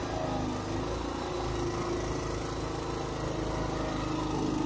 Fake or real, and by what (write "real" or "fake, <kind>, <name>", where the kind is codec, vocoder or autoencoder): real